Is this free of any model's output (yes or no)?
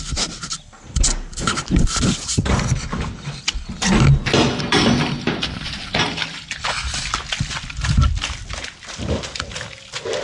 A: yes